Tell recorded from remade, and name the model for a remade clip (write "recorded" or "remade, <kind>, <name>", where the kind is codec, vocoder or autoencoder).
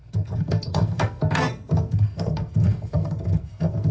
remade, codec, SNAC